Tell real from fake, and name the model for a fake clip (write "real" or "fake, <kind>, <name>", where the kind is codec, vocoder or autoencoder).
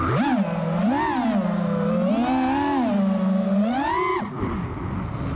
real